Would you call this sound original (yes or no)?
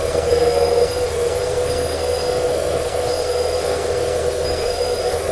no